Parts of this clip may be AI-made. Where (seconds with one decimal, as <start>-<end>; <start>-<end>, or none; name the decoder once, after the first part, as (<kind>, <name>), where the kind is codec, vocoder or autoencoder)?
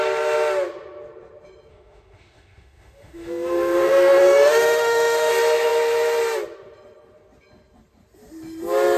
1.7-5.3 (autoencoder, DAC-VAE)